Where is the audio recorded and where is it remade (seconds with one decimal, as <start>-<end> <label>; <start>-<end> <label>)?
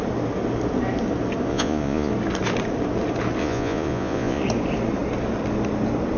0.0-1.5 recorded; 1.5-2.1 remade; 2.1-3.4 recorded; 3.4-4.4 remade; 4.4-6.2 recorded